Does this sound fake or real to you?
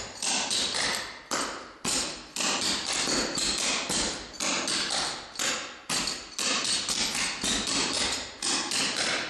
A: real